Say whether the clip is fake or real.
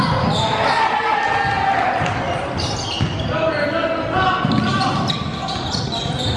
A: real